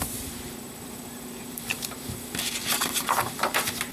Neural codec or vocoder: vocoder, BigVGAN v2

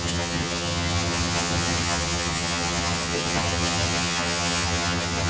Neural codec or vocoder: vocoder, HiFi-GAN